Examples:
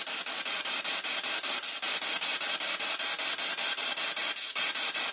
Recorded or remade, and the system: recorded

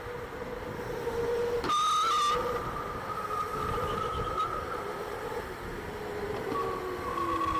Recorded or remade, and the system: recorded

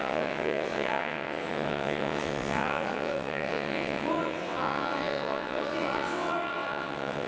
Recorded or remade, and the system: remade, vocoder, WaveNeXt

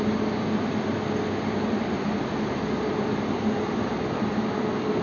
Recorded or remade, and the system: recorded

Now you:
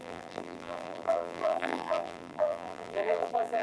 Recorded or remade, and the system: remade, vocoder, BigVGAN v2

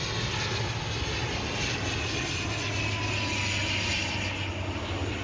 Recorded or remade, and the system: recorded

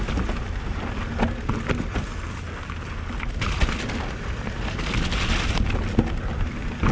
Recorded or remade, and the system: recorded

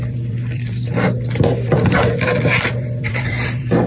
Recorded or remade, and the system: remade, vocoder, BigVGAN v2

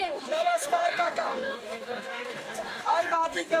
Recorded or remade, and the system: remade, codec, DAC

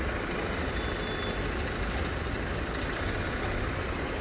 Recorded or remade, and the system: recorded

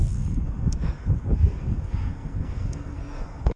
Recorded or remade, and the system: remade, codec, SNAC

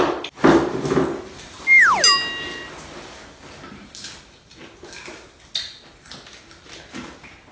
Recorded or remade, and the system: recorded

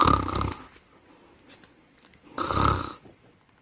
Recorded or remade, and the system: recorded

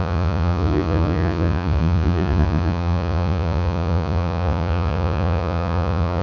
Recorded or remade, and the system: remade, vocoder, Vocos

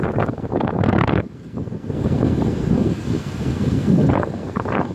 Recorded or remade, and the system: remade, codec, SNAC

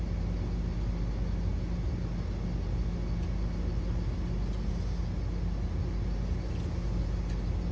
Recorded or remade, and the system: recorded